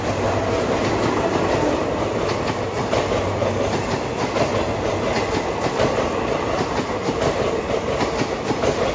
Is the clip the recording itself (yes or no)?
yes